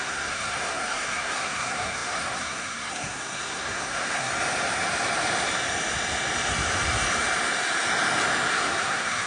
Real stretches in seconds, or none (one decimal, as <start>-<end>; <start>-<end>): 4.3-8.5